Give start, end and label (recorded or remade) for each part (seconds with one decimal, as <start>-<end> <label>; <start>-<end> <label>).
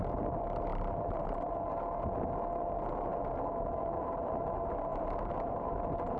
0.0-0.7 recorded; 0.7-1.5 remade; 1.5-4.9 recorded; 4.9-6.2 remade